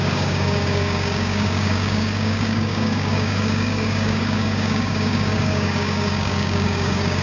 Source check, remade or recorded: remade